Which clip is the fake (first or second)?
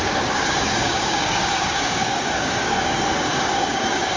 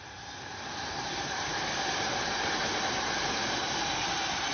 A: first